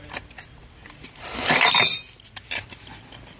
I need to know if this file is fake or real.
real